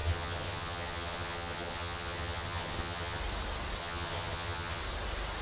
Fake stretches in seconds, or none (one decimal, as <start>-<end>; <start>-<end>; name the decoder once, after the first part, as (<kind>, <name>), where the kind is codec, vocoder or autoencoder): 0.0-3.2 (vocoder, HiFi-GAN); 3.8-4.8